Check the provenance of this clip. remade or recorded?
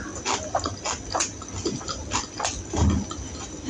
recorded